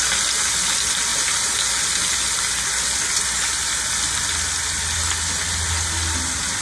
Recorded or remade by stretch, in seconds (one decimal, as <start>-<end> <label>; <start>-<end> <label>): 0.0-6.6 recorded